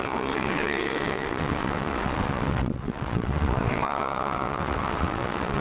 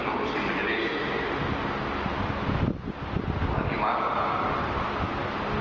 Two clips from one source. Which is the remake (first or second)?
first